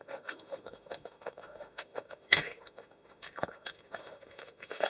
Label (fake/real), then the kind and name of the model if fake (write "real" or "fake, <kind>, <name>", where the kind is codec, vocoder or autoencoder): fake, autoencoder, DAC-VAE